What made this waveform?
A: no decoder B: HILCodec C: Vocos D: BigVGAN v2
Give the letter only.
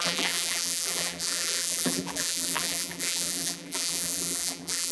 D